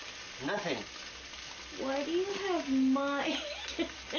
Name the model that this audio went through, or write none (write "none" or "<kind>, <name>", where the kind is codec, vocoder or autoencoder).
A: none